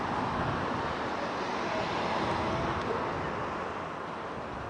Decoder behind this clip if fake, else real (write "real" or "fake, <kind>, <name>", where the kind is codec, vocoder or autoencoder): real